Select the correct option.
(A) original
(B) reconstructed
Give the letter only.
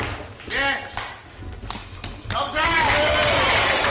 A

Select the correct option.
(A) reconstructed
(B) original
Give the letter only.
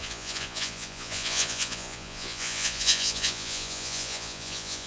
A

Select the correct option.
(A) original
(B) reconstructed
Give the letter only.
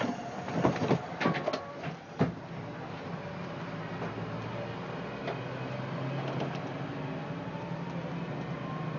A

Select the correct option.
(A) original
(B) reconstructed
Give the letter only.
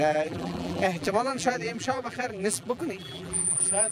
B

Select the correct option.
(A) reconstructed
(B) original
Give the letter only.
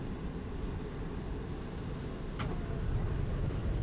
B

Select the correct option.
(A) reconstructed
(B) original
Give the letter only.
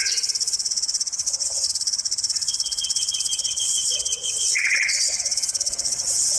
A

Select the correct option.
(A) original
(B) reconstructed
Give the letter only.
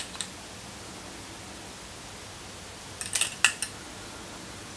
A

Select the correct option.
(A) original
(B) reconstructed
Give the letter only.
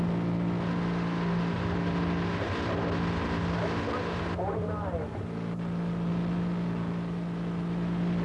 A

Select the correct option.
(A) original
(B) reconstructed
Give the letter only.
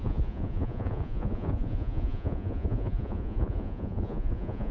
B